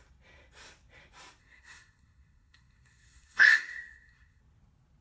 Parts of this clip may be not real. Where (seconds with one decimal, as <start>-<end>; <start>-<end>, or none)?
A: 1.4-4.4